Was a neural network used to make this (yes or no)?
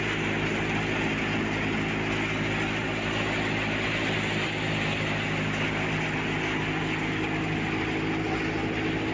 no